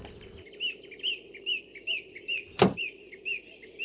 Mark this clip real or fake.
real